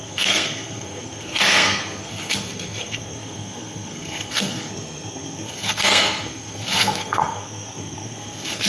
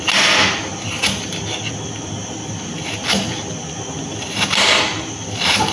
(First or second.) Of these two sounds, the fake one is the first